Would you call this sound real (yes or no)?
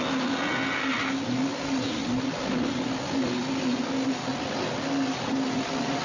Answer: yes